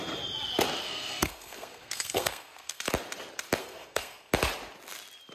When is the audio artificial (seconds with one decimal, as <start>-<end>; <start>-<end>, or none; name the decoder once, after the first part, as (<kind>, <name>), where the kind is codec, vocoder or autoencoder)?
0.8-2.8 (codec, SNAC); 3.6-4.3